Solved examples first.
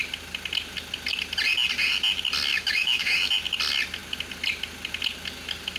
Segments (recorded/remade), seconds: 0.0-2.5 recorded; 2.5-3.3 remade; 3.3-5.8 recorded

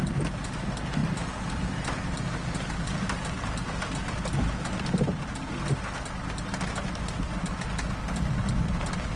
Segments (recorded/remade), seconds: 0.0-9.2 recorded